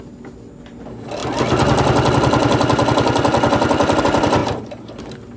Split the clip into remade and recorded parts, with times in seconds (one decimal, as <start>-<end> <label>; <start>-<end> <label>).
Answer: 0.0-5.4 recorded

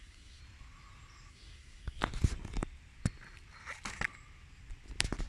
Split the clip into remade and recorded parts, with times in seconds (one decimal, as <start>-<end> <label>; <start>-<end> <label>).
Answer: 0.0-0.4 remade; 0.4-1.3 recorded; 1.3-2.0 remade; 2.0-5.3 recorded

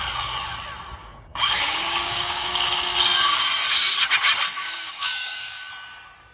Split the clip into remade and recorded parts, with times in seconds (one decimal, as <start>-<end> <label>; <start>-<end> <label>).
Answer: 0.0-1.0 recorded; 1.0-3.3 remade; 3.3-4.6 recorded; 4.6-5.7 remade; 5.7-6.3 recorded